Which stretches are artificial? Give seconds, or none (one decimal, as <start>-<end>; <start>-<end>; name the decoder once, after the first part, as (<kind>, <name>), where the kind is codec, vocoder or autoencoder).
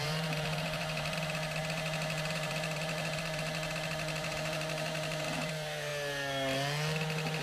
0.0-5.9 (vocoder, BigVGAN v2)